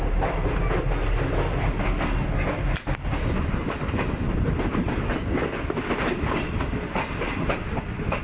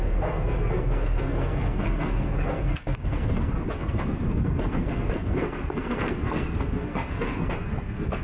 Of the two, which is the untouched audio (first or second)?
first